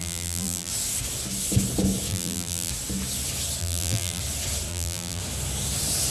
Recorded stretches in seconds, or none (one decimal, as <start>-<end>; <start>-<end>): 0.7-2.1; 2.7-3.6; 4.2-4.7; 5.2-6.1